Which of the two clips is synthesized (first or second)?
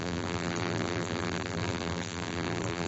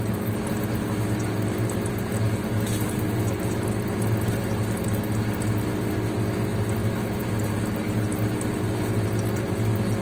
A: first